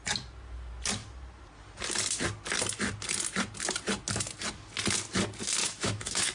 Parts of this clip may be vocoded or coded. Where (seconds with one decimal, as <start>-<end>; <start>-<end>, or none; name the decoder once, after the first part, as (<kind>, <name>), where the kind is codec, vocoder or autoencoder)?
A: 5.6-6.3 (autoencoder, DAC-VAE)